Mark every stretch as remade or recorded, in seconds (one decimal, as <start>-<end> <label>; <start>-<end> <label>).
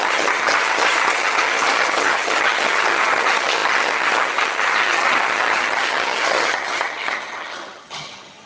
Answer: 0.0-8.5 remade